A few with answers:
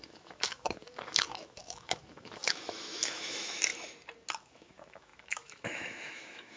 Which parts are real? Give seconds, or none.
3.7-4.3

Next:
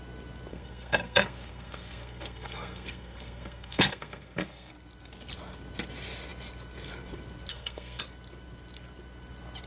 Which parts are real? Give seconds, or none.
0.0-0.5; 4.7-7.5; 8.0-9.7

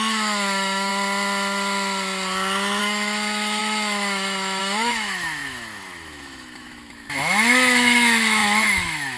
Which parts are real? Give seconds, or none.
0.9-2.8

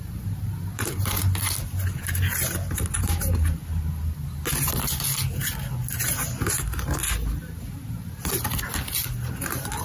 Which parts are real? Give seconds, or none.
1.2-2.0; 3.6-6.0; 7.0-9.3

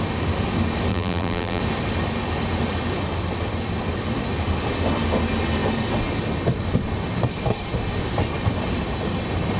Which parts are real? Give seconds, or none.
0.0-0.9; 1.6-9.6

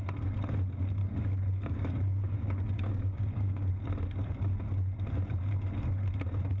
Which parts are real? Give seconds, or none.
0.0-1.0; 3.7-6.6

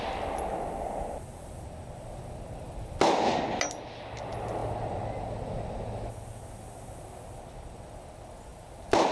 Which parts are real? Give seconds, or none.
0.0-9.1